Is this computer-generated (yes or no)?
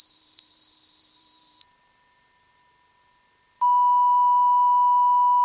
no